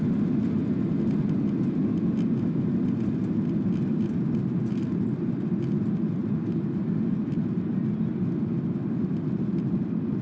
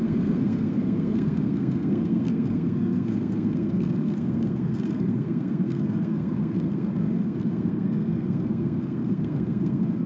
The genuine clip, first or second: first